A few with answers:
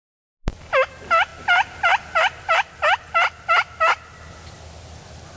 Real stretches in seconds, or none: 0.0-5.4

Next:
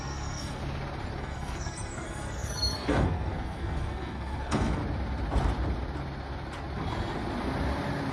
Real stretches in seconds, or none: 0.6-1.2; 4.8-8.1

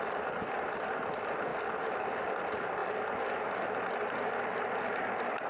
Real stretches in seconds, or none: 0.0-5.5